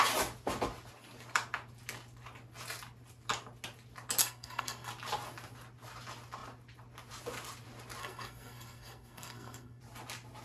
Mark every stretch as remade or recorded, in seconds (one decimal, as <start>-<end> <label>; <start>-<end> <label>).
0.0-4.2 recorded; 4.2-4.9 remade; 4.9-8.0 recorded; 8.0-9.8 remade; 9.8-10.4 recorded